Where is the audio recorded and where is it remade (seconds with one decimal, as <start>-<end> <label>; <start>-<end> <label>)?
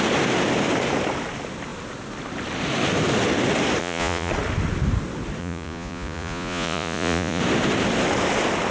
0.0-3.8 recorded; 3.8-4.3 remade; 4.3-5.4 recorded; 5.4-7.4 remade; 7.4-8.7 recorded